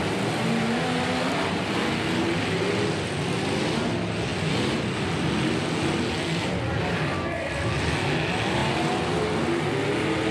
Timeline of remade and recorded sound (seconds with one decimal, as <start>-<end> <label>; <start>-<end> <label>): 0.0-10.3 recorded

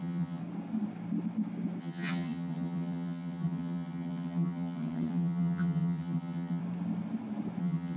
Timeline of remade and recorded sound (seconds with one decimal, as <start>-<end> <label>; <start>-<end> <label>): 0.0-0.4 remade; 0.4-1.8 recorded; 1.8-6.6 remade; 6.6-7.6 recorded; 7.6-8.0 remade

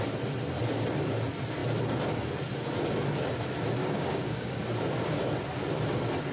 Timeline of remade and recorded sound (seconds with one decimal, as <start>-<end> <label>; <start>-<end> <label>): 0.0-3.8 recorded; 3.8-4.6 remade; 4.6-6.3 recorded

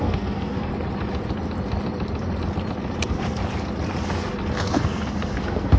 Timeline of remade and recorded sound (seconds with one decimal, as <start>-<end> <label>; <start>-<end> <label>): 0.0-0.7 remade; 0.7-3.0 recorded; 3.0-3.4 remade; 3.4-4.5 recorded; 4.5-5.8 remade

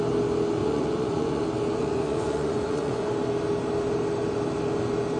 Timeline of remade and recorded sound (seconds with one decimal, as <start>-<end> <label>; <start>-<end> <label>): 0.0-0.6 recorded; 0.6-1.4 remade; 1.4-1.8 recorded; 1.8-3.1 remade; 3.1-5.2 recorded